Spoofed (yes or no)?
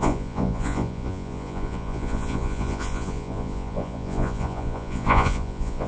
yes